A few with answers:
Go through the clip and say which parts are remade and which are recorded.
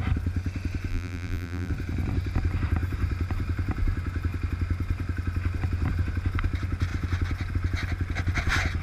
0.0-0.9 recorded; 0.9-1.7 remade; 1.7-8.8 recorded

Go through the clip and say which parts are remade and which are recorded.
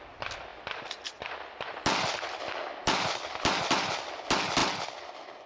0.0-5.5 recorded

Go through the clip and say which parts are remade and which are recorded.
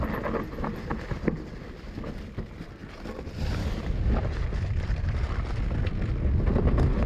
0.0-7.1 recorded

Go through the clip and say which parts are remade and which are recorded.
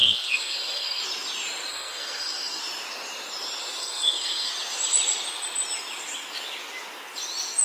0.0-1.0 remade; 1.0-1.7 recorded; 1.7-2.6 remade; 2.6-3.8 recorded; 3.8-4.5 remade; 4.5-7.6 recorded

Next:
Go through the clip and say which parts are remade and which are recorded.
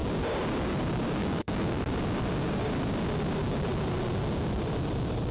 0.0-1.2 recorded; 1.2-1.8 remade; 1.8-5.3 recorded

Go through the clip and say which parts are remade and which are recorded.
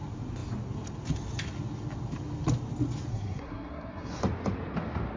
0.0-3.1 recorded; 3.1-4.2 remade; 4.2-5.2 recorded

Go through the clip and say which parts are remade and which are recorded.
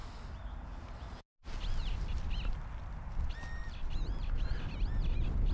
0.0-3.6 recorded; 3.6-4.6 remade; 4.6-5.5 recorded